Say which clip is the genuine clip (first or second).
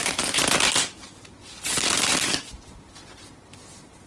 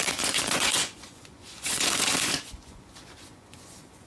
first